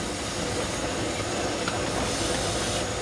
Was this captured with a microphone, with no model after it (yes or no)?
yes